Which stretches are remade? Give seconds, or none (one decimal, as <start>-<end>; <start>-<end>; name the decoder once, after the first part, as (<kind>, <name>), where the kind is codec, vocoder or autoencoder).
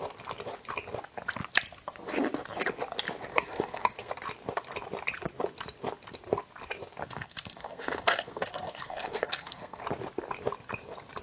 3.3-4.1 (codec, SNAC); 7.0-9.8